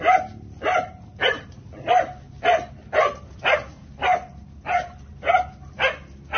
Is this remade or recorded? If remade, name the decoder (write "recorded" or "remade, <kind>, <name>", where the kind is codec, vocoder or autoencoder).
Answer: recorded